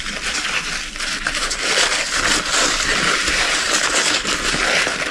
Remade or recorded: recorded